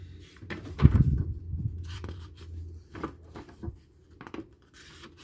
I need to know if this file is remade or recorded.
remade